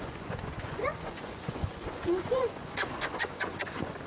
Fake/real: fake